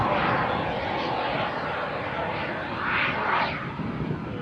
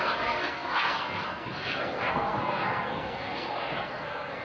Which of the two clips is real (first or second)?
first